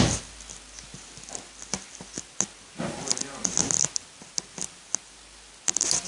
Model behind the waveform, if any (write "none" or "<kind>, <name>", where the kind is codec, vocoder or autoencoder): none